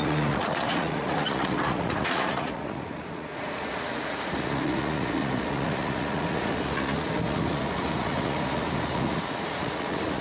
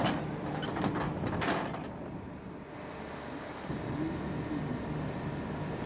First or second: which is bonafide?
second